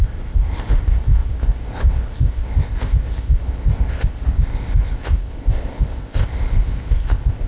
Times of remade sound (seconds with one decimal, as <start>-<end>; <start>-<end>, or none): 0.0-7.5